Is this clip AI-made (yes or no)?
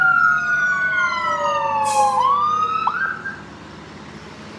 no